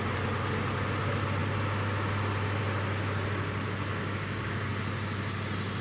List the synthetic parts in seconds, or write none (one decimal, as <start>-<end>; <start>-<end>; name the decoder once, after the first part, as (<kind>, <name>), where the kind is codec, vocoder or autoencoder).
3.9-4.7 (codec, DAC)